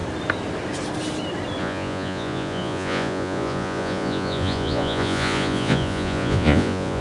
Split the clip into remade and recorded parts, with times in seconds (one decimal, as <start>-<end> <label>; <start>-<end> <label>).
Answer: 0.0-1.6 recorded; 1.6-7.0 remade